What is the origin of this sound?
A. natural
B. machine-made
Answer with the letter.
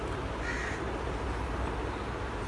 A